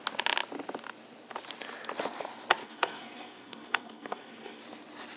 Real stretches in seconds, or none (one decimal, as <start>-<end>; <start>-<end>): 0.0-2.6; 4.6-5.2